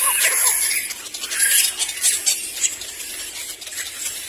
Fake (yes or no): no